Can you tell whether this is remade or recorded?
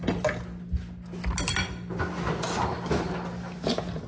recorded